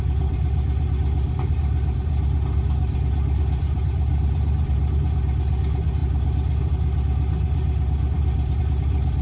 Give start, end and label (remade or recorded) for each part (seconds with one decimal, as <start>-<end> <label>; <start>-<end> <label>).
0.0-9.2 remade